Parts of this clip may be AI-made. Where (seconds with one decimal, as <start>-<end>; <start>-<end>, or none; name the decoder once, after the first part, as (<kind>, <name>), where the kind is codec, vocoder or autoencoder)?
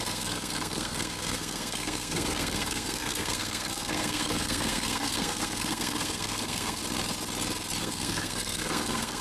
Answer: 0.0-6.8 (codec, SNAC); 7.8-9.2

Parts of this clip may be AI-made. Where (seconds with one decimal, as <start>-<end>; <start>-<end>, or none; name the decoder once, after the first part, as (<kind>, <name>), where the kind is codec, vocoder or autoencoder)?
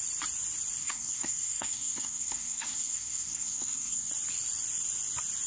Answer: 0.8-4.1 (codec, SNAC)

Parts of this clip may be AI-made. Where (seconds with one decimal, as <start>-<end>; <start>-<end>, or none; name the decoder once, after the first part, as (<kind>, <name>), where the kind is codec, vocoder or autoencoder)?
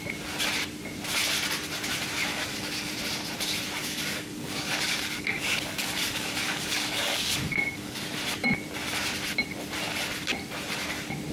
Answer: 2.3-2.9 (codec, DAC); 3.8-8.0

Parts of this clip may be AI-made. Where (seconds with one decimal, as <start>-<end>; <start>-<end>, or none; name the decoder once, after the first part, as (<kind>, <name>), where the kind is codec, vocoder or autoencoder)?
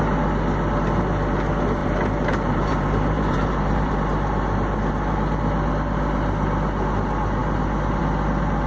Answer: 1.8-3.9 (vocoder, BigVGAN v2)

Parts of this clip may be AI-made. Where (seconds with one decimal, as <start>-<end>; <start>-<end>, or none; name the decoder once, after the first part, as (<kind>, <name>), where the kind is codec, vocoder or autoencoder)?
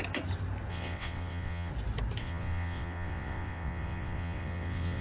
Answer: 0.7-1.7 (vocoder, WaveNeXt); 2.2-5.0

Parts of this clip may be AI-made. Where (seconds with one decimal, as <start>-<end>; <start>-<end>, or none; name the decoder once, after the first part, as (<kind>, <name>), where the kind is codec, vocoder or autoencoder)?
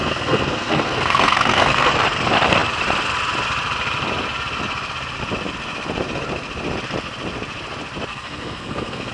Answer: 0.0-1.9 (codec, SNAC); 8.1-9.1